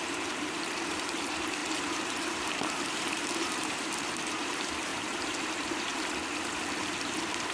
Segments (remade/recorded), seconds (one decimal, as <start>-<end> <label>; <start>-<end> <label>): 0.0-5.9 remade; 5.9-6.8 recorded; 6.8-7.5 remade